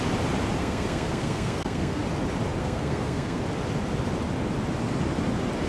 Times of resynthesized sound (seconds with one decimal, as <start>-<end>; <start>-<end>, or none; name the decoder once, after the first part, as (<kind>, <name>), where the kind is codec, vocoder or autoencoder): 0.6-2.0 (codec, SNAC); 2.6-3.4